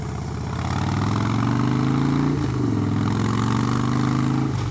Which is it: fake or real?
real